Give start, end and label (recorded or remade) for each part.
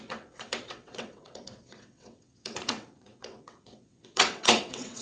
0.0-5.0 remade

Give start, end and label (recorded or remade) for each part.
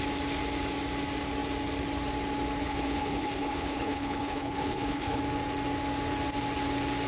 0.0-2.6 recorded; 2.6-5.2 remade; 5.2-7.1 recorded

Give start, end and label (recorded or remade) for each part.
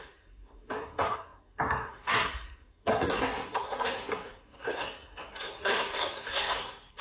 0.0-7.0 remade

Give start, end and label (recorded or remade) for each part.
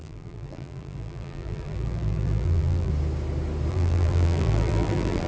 0.0-2.9 remade; 2.9-3.7 recorded; 3.7-5.3 remade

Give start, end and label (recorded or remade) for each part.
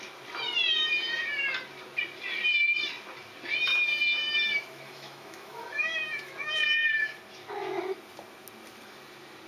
0.0-3.7 recorded; 3.7-7.2 remade; 7.2-9.5 recorded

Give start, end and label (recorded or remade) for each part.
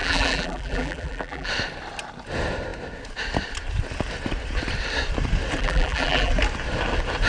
0.0-1.5 remade; 1.5-5.6 recorded; 5.6-6.3 remade; 6.3-7.3 recorded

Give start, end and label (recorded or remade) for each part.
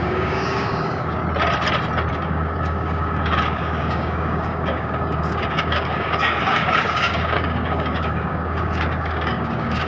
0.0-1.2 remade; 1.2-2.1 recorded; 2.1-9.9 remade